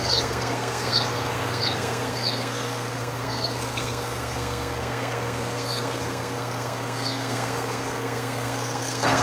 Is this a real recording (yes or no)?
no